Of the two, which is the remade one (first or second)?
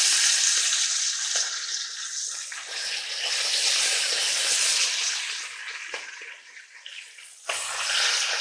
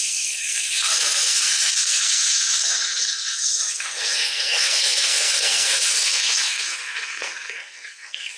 second